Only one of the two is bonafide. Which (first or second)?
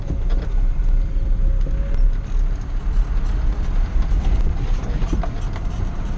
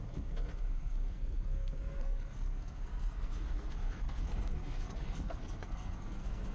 first